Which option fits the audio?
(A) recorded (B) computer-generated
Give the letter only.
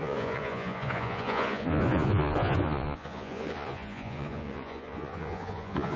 B